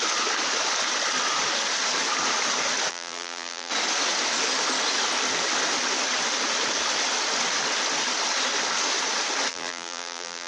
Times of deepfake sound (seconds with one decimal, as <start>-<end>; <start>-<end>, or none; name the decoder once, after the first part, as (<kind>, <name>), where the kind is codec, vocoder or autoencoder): 2.9-3.7 (vocoder, BigVGAN v2); 9.5-10.5